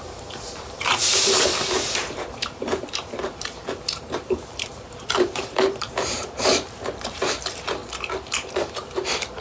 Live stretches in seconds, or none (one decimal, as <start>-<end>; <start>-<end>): 7.8-8.6